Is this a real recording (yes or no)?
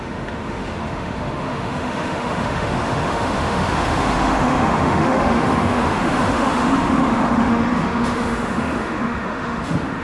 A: no